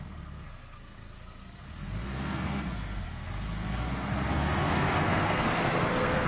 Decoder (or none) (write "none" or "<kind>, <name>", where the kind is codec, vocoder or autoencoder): codec, SNAC